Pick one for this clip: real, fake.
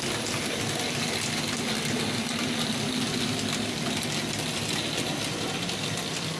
real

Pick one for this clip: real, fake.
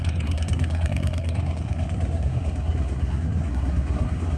fake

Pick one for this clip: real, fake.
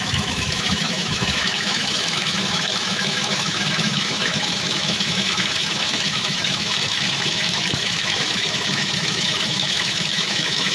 fake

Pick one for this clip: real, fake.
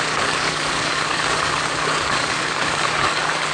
fake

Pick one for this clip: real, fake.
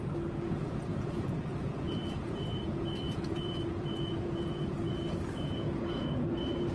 fake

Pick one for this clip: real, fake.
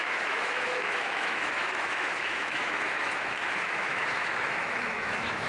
fake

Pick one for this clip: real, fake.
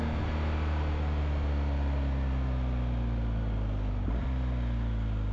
real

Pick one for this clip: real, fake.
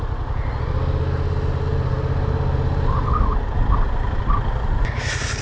real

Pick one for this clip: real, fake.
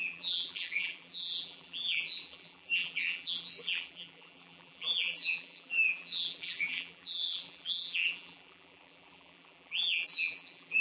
fake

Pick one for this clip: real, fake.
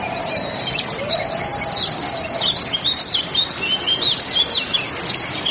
real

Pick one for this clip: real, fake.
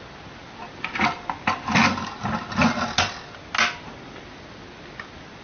real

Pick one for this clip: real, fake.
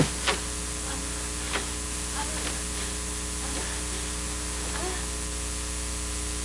real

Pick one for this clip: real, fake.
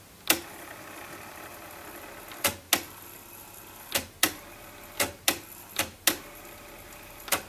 real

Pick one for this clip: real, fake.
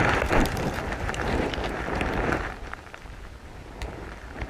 fake